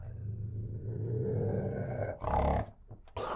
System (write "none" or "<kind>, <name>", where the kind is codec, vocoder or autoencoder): none